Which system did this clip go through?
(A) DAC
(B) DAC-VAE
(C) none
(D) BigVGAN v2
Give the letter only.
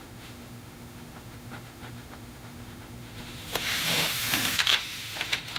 B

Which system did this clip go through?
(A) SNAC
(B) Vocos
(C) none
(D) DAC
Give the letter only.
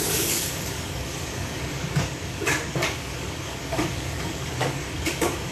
D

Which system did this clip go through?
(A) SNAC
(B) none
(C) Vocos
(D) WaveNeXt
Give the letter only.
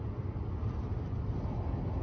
B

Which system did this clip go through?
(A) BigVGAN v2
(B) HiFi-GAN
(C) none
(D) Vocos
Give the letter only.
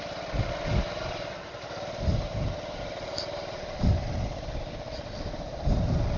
C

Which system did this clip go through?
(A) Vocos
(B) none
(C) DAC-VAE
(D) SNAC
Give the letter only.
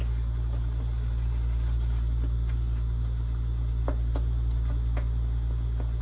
B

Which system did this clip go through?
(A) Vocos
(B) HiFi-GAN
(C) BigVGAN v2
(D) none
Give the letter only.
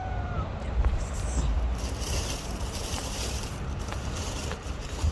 C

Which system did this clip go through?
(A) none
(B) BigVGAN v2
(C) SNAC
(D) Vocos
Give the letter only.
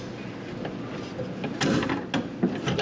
A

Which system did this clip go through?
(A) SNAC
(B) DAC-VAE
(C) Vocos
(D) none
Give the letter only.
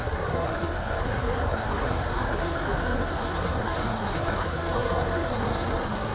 A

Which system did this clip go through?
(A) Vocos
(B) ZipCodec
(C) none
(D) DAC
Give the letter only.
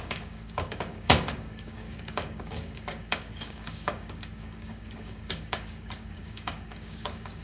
D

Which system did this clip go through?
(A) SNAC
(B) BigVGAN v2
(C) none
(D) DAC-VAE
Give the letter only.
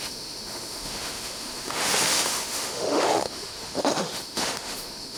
D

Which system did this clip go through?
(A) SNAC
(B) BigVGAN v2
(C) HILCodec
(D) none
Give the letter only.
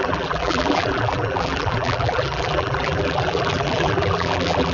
B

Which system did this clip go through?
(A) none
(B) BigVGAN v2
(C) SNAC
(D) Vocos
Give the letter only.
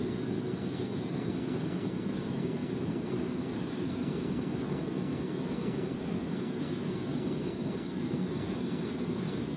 C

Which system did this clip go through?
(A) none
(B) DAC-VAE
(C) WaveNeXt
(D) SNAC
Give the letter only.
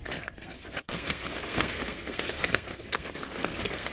D